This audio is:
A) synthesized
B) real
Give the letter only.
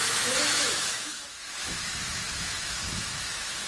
A